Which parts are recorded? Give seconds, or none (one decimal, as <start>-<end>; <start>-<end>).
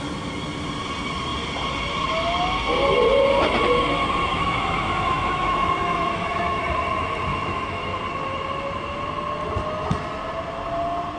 0.0-4.3; 6.6-7.3; 8.0-11.2